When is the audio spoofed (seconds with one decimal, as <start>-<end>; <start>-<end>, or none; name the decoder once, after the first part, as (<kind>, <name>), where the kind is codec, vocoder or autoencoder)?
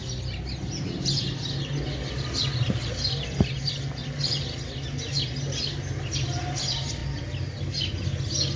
none